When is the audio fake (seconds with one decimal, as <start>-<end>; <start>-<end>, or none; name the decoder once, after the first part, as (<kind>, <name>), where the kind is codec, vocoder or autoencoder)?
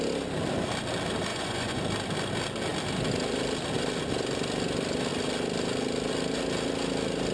1.3-1.8 (vocoder, Vocos)